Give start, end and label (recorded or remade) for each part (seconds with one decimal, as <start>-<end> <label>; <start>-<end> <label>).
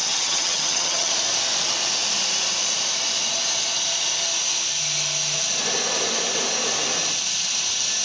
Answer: 0.0-1.1 remade; 1.1-8.0 recorded